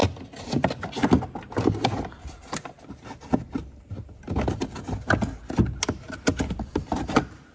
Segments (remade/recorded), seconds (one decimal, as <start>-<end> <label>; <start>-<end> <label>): 0.0-7.5 recorded